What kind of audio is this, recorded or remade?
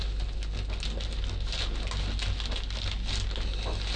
recorded